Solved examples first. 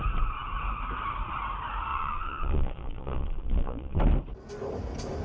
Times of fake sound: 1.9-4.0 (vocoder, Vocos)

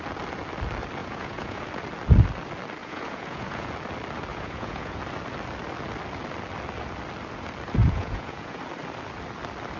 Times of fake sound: 1.0-1.6 (vocoder, Vocos); 2.8-3.7; 4.3-5.0; 7.8-8.6

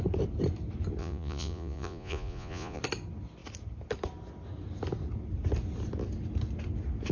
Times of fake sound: 1.0-2.8 (vocoder, Vocos)

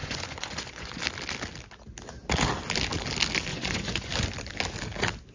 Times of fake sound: 0.0-1.0 (vocoder, Vocos); 3.5-4.1

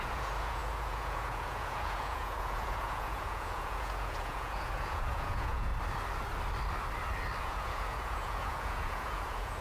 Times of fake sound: 0.0-5.7 (vocoder, Vocos); 7.4-9.6

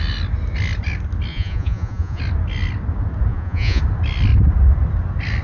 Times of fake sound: 1.3-2.2 (vocoder, Vocos); 3.3-3.8

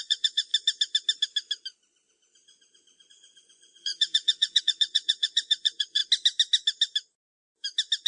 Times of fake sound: 0.0-0.5 (vocoder, Vocos); 3.1-6.0